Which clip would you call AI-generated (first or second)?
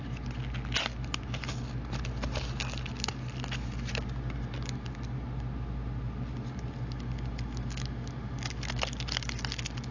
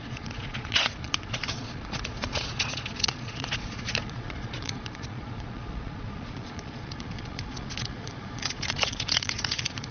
second